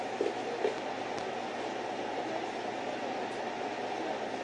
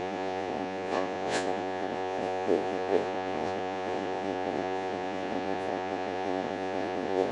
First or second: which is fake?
second